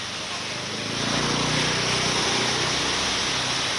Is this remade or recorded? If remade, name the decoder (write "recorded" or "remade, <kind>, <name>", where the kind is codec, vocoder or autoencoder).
recorded